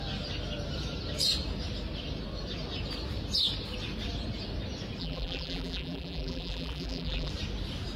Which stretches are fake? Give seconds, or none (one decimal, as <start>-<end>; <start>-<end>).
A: 5.0-7.3